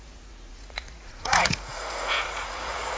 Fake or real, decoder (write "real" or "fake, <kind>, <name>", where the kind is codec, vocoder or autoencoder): fake, vocoder, Vocos